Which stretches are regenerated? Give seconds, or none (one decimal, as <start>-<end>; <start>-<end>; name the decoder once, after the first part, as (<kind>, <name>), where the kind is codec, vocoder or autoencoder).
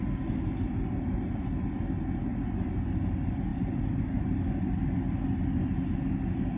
none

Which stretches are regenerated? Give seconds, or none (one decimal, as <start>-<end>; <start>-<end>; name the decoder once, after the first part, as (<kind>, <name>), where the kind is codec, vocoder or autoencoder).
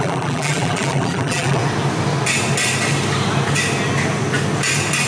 0.0-1.6 (vocoder, BigVGAN v2)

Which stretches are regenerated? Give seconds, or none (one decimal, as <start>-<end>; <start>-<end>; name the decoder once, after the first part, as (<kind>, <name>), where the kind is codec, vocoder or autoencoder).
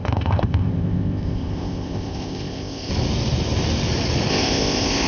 0.0-2.9 (codec, ZipCodec); 4.3-5.1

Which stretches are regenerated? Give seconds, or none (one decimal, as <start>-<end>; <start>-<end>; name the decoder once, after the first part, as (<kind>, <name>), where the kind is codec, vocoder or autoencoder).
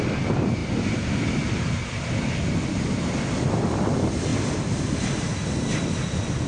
none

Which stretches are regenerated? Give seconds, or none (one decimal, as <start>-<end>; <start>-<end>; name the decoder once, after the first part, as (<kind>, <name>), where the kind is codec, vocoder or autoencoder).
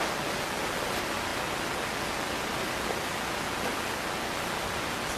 none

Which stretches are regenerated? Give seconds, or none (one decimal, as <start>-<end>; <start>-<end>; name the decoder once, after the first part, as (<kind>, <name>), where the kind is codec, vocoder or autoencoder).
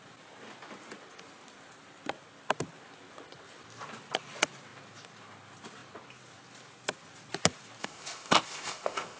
7.8-9.2 (codec, ZipCodec)